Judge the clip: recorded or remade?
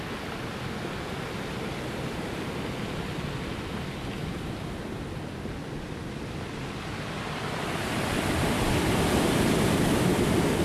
recorded